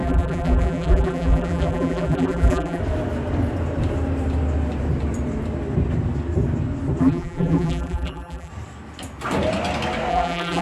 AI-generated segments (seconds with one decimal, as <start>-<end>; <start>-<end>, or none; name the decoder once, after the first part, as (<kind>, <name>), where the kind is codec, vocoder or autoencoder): 0.0-2.8 (vocoder, BigVGAN v2); 7.0-8.5; 10.1-10.6